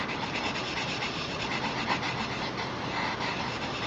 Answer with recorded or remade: recorded